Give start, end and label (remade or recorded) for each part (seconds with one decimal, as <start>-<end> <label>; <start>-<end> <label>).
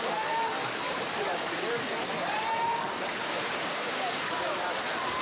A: 0.0-3.2 recorded; 3.2-4.2 remade; 4.2-5.2 recorded